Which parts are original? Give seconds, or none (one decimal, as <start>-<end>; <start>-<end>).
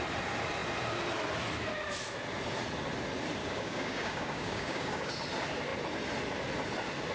0.0-3.4; 5.1-7.1